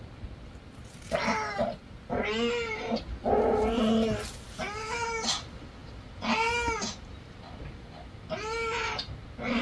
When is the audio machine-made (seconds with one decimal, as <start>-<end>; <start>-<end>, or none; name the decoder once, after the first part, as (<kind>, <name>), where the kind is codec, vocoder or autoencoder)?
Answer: none